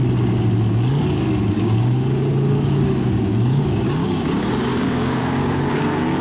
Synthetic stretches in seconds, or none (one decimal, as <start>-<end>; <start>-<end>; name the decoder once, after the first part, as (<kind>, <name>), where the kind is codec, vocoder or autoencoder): 1.5-6.2 (codec, DAC)